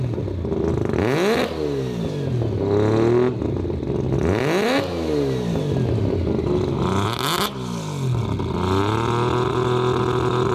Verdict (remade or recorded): recorded